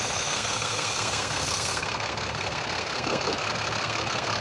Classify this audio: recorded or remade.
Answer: remade